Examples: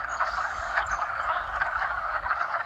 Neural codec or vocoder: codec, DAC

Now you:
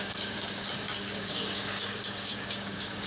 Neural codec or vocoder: codec, DAC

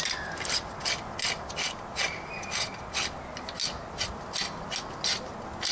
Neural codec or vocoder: none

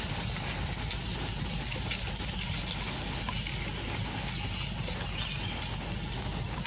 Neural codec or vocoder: none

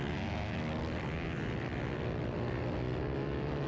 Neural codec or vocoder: none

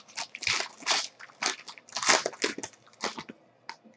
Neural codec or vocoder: none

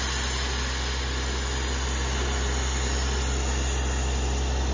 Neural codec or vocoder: none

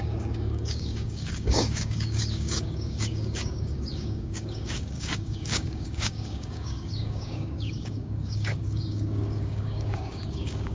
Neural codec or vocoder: codec, DAC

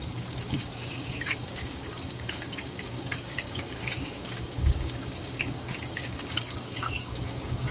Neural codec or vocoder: codec, DAC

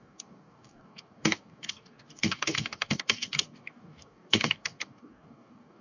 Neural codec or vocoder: codec, DAC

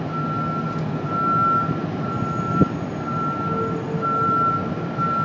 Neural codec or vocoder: none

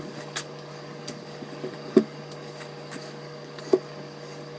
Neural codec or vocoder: codec, DAC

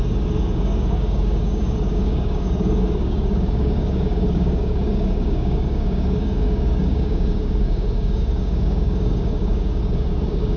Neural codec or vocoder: codec, DAC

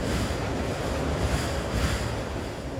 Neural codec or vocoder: none